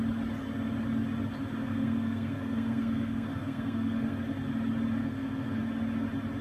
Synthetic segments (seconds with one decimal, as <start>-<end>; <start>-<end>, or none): 1.6-4.2; 5.0-5.6